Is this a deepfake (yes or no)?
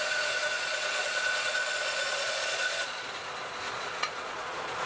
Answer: yes